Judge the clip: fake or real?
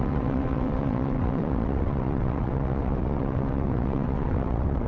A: fake